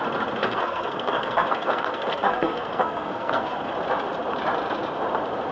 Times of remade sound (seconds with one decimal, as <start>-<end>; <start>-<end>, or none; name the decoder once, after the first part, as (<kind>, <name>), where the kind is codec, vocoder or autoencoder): 0.4-3.7 (codec, SNAC)